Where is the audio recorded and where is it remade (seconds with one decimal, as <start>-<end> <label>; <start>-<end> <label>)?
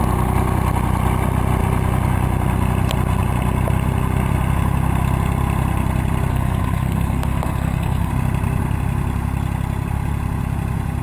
0.0-6.3 recorded; 6.3-8.1 remade; 8.1-11.0 recorded